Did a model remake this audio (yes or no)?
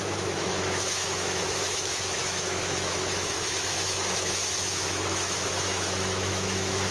yes